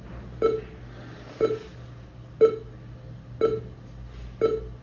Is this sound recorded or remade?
recorded